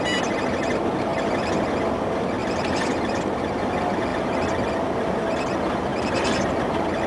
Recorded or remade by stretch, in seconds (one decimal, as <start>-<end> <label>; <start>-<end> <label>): 0.0-1.1 recorded; 1.1-1.7 remade; 1.7-2.4 recorded; 2.4-3.2 remade; 3.2-5.9 recorded; 5.9-6.5 remade; 6.5-7.1 recorded